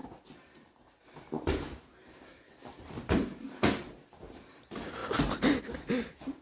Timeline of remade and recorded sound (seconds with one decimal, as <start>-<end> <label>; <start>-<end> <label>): 0.0-6.4 recorded